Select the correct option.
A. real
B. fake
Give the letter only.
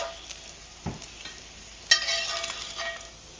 A